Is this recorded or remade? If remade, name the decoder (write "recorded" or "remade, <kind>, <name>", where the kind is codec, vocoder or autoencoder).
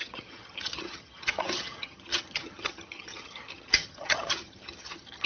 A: remade, vocoder, HiFi-GAN